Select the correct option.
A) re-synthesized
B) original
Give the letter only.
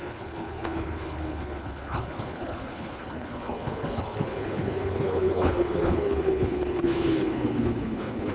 A